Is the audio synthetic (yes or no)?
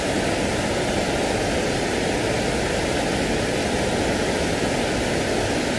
no